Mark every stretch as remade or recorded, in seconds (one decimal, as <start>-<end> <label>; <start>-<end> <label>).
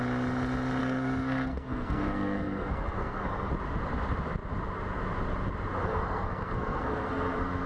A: 0.0-0.8 recorded; 0.8-3.5 remade; 3.5-5.8 recorded; 5.8-7.7 remade